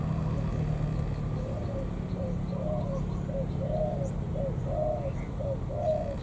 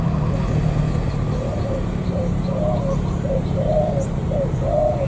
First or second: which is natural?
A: first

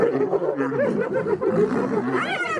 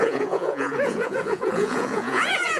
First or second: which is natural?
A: first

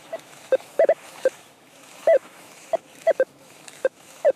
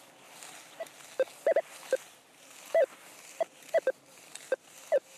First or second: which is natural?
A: second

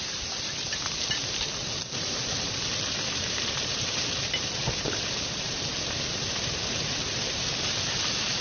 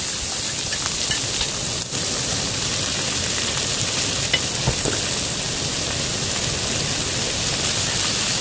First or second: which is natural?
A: second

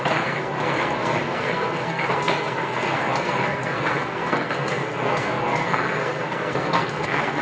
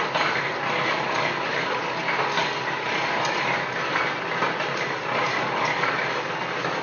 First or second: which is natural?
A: second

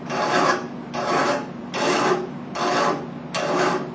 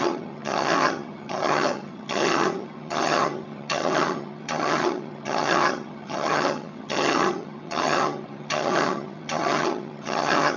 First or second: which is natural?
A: first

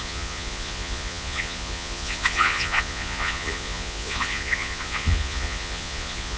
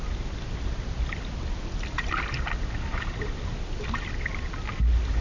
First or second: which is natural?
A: second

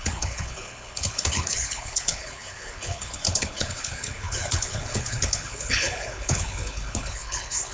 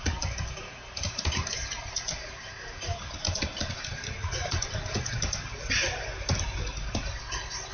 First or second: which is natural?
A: second